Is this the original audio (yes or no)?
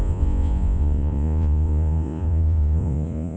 no